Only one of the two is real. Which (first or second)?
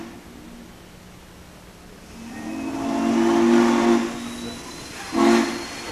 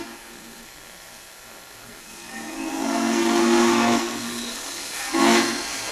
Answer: first